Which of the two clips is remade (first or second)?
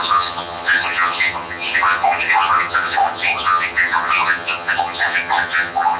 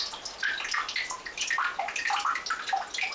first